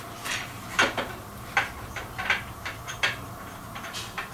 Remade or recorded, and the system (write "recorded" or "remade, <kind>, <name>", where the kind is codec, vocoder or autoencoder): remade, vocoder, BigVGAN v2